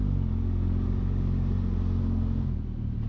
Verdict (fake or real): real